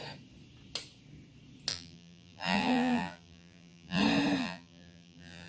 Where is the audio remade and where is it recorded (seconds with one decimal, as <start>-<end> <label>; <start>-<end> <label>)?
0.0-1.7 recorded; 1.7-4.0 remade; 4.0-4.4 recorded; 4.4-5.5 remade